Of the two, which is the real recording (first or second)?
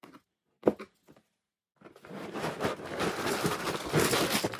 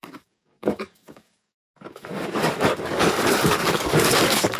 first